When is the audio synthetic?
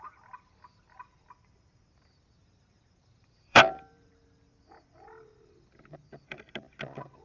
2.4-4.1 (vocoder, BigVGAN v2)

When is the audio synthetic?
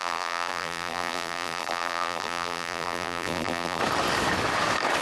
0.0-3.8 (vocoder, BigVGAN v2)